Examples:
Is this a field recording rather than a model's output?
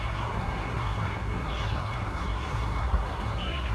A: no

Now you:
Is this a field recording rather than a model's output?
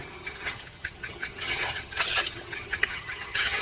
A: no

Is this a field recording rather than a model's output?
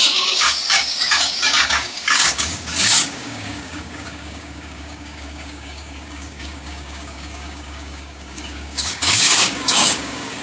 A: no